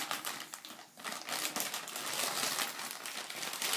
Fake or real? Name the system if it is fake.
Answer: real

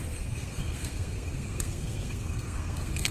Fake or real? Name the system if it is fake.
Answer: fake, codec, SNAC